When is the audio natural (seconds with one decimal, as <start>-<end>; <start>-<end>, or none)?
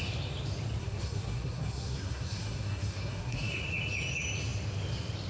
0.0-0.8; 3.6-5.3